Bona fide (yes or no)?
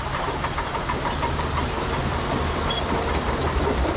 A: no